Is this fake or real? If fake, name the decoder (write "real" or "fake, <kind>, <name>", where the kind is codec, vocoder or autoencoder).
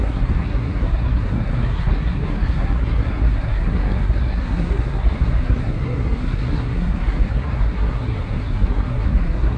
fake, codec, SNAC